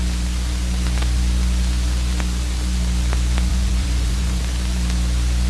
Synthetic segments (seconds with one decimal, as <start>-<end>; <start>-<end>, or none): 3.5-4.4